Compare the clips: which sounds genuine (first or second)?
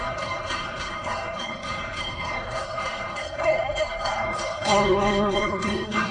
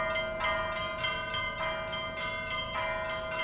second